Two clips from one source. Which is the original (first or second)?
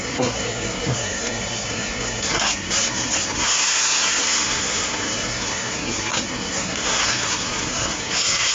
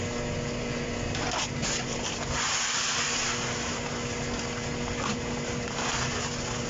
second